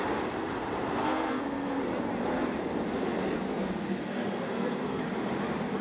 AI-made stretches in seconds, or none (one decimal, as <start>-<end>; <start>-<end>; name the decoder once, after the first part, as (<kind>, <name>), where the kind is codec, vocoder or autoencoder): 1.0-1.8 (codec, SNAC); 3.5-5.0